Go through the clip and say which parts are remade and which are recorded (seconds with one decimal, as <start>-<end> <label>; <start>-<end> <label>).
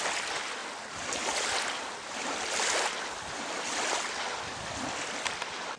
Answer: 0.0-5.8 recorded